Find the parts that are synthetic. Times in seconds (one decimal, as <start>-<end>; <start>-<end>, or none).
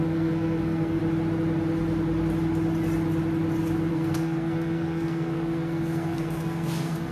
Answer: 0.0-1.0; 3.9-7.1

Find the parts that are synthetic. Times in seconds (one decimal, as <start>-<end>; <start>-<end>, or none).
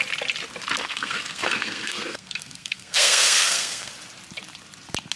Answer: 0.8-3.9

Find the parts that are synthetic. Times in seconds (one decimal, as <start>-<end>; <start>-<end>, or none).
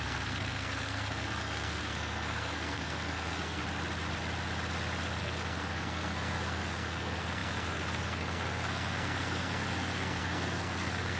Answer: 0.0-3.6; 5.2-11.2